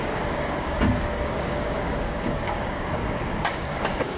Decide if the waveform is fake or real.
fake